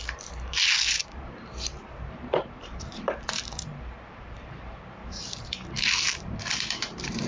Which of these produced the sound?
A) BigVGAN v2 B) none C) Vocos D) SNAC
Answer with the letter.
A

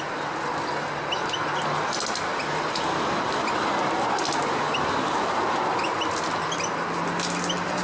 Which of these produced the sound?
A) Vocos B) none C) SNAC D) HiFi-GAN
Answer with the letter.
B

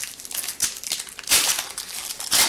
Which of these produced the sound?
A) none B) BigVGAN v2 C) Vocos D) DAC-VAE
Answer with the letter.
A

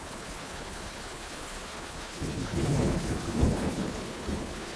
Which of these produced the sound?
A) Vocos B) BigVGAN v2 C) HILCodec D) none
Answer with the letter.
C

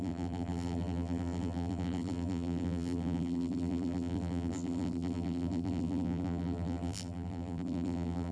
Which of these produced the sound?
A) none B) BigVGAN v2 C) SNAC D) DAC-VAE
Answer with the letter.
B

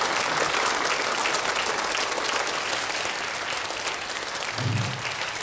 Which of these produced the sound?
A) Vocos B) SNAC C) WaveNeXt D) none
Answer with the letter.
D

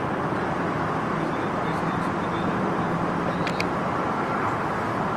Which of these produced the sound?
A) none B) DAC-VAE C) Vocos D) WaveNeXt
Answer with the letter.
A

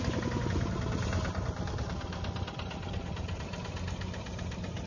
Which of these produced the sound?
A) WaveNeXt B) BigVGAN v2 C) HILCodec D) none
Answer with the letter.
D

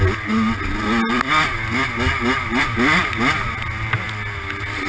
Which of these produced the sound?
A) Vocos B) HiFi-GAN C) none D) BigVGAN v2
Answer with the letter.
C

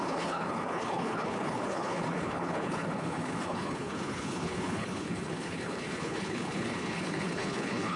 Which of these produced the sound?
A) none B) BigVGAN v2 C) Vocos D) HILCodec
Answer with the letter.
D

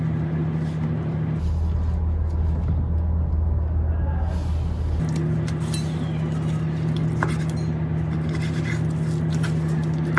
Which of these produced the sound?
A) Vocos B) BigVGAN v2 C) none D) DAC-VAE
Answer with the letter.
C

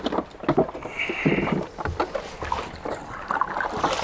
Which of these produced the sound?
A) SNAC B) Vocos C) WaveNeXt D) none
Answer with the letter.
D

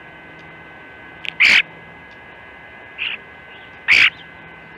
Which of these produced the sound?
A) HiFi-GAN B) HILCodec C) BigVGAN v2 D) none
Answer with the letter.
D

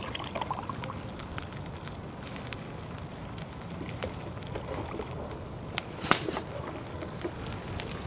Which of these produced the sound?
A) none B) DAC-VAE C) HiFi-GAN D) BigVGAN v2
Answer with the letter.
A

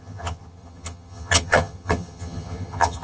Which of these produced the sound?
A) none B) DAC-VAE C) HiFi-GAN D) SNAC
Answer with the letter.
C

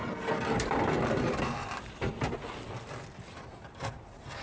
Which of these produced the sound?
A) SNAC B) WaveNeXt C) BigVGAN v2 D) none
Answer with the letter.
C